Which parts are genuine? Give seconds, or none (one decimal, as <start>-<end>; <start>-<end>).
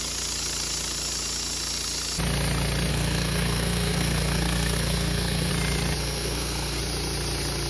0.0-2.9; 5.5-6.0; 6.8-7.7